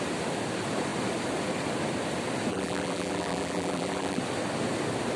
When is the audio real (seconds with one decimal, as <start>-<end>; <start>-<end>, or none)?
0.0-2.5; 4.2-5.2